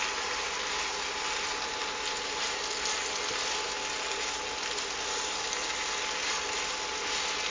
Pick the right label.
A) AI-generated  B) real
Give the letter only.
B